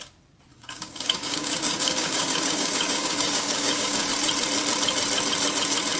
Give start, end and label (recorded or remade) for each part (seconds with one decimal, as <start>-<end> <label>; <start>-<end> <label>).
0.0-0.5 recorded; 0.5-4.1 remade; 4.1-6.0 recorded

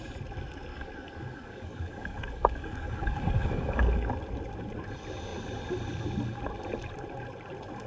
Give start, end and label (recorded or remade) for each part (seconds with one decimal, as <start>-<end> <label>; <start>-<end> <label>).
0.0-0.7 recorded; 0.7-4.1 remade; 4.1-7.9 recorded

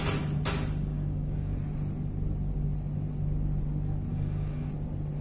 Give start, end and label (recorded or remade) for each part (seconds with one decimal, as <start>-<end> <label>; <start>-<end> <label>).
0.0-0.9 recorded; 0.9-1.6 remade; 1.6-4.1 recorded; 4.1-4.7 remade; 4.7-5.2 recorded

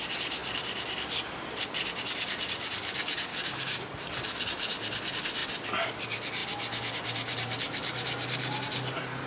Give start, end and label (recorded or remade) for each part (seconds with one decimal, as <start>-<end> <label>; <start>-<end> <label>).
0.0-3.3 recorded; 3.3-3.8 remade; 3.8-9.3 recorded

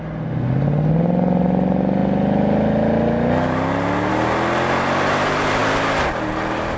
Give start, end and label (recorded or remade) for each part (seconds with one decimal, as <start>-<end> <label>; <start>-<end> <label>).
0.0-6.8 recorded

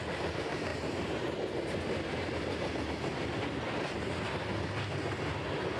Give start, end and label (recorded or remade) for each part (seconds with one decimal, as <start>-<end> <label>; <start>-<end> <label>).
0.0-5.8 recorded

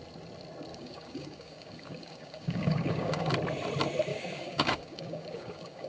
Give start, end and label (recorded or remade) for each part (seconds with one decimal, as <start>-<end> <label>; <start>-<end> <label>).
0.0-0.7 recorded; 0.7-3.3 remade; 3.3-4.1 recorded; 4.1-5.9 remade

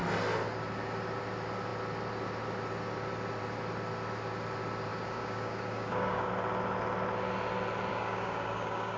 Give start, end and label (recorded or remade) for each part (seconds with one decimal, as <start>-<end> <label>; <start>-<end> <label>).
0.0-4.9 recorded; 4.9-6.3 remade; 6.3-7.9 recorded; 7.9-9.0 remade